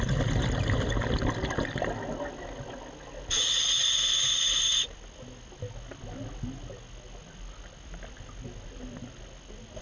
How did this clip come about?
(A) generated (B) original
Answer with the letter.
B